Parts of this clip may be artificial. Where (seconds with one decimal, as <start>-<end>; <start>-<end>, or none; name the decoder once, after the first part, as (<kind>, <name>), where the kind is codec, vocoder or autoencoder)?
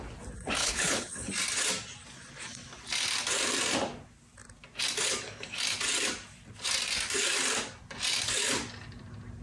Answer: 0.6-1.3 (codec, HILCodec)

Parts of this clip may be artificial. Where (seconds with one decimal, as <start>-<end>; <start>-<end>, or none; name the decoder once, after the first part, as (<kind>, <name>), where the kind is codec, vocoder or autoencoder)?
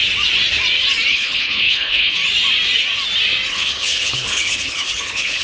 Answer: 1.1-2.2 (codec, HILCodec); 3.5-5.4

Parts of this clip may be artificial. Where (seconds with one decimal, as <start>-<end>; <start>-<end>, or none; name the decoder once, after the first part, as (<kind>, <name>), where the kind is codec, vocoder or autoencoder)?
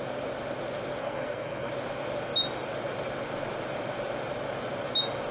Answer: 1.0-1.7 (codec, SNAC)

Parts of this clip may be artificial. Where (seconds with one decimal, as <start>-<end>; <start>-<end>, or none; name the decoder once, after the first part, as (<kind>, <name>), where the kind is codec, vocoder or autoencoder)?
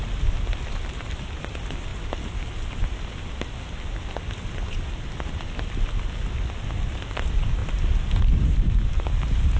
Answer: 1.9-5.3 (vocoder, BigVGAN v2)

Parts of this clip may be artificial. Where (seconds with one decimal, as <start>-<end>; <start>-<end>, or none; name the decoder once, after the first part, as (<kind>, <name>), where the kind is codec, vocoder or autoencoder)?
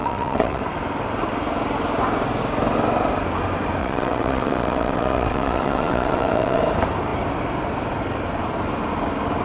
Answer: 0.0-0.6 (vocoder, WaveNeXt); 3.8-6.6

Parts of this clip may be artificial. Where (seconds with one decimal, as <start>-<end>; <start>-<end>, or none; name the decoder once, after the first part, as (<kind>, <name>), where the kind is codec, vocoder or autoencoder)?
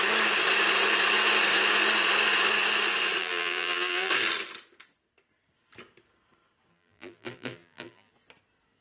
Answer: 3.2-4.1 (vocoder, BigVGAN v2); 6.7-8.1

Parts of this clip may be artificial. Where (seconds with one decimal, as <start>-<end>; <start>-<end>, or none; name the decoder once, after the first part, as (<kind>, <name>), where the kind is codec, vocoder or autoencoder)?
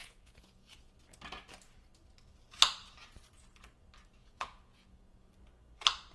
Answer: 0.0-0.9 (vocoder, Vocos); 4.2-5.3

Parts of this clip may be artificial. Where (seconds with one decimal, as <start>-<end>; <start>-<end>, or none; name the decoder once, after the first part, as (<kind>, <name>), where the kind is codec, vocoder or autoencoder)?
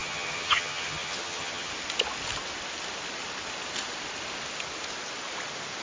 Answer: 0.0-1.7 (vocoder, HiFi-GAN)